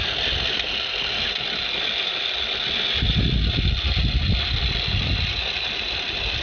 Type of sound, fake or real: real